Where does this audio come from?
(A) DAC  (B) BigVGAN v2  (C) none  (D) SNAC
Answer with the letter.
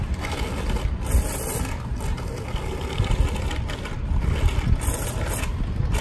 C